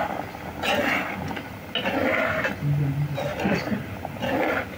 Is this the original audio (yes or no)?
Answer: yes